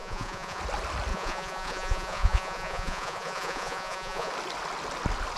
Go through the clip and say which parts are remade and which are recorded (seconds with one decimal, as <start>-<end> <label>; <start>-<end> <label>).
0.0-0.6 remade; 0.6-1.1 recorded; 1.1-4.3 remade; 4.3-5.4 recorded